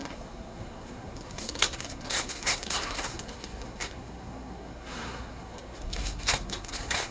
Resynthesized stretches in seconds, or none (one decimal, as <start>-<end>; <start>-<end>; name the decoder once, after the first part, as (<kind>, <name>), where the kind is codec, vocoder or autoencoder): 0.0-7.1 (codec, SNAC)